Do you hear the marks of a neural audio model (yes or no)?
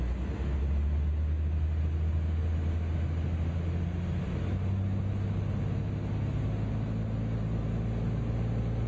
no